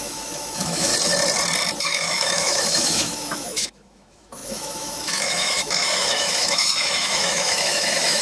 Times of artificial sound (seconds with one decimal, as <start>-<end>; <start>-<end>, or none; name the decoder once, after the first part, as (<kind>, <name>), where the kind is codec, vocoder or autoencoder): 0.0-0.9 (autoencoder, DAC-VAE); 1.8-8.2